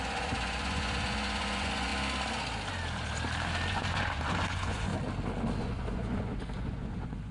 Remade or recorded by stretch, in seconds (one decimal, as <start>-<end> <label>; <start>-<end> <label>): 0.0-1.9 remade; 1.9-3.7 recorded; 3.7-4.9 remade; 4.9-5.6 recorded; 5.6-7.3 remade